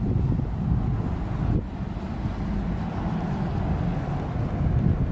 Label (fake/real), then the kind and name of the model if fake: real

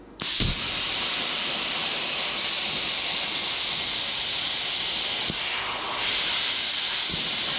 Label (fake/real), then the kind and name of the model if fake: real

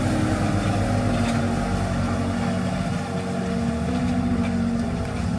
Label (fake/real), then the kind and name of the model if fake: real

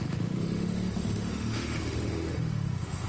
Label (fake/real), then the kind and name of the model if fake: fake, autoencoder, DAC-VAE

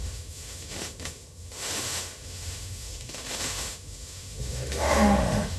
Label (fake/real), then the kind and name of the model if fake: fake, autoencoder, DAC-VAE